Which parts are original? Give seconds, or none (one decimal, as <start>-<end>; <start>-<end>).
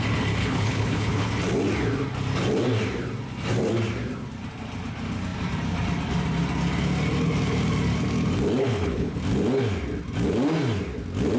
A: 0.0-0.4; 1.3-8.6; 9.2-11.4